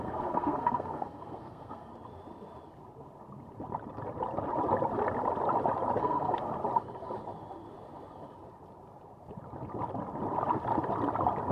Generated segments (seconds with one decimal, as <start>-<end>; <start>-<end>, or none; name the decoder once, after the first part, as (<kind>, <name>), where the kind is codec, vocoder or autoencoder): 0.0-1.9 (codec, SNAC); 6.0-6.5